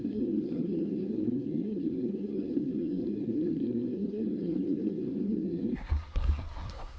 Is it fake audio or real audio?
fake